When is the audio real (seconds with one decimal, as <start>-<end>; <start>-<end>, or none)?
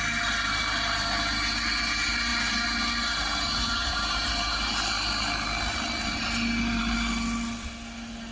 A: 0.0-8.3